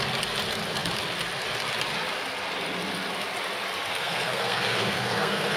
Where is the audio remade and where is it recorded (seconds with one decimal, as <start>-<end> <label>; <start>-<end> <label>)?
0.0-3.9 recorded; 3.9-5.6 remade